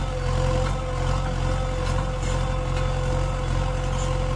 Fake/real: real